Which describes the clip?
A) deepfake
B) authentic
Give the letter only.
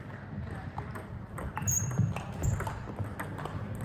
B